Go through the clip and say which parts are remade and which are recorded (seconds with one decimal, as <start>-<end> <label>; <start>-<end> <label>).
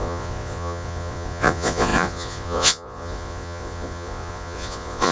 0.0-5.1 remade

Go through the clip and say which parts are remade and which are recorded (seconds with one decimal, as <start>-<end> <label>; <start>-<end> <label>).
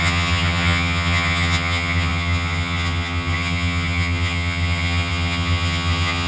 0.0-6.3 remade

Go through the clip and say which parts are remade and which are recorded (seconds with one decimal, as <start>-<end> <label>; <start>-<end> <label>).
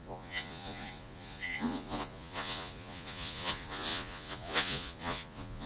0.0-5.7 remade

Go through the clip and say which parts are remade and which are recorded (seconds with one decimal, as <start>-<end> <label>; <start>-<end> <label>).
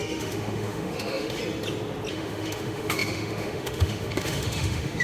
0.0-1.4 remade; 1.4-2.1 recorded; 2.1-5.0 remade